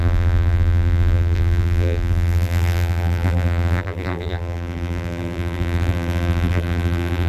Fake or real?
fake